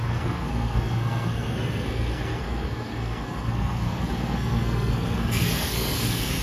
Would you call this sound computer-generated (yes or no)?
yes